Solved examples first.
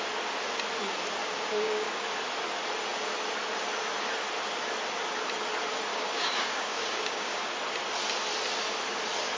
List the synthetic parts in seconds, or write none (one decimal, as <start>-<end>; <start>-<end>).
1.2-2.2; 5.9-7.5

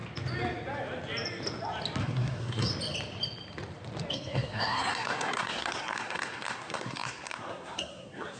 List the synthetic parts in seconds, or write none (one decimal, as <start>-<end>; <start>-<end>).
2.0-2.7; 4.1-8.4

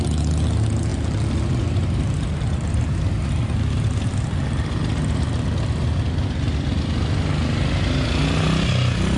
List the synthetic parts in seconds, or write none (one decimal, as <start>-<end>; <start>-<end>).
none